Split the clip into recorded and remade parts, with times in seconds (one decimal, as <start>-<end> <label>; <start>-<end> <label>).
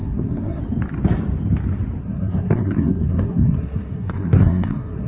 0.0-0.6 remade; 0.6-2.0 recorded; 2.0-5.1 remade